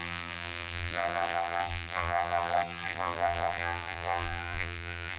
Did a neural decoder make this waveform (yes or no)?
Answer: yes